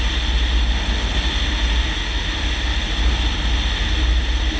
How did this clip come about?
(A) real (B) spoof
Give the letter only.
A